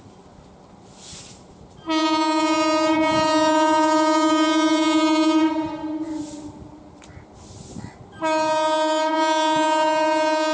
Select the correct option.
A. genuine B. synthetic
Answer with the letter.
A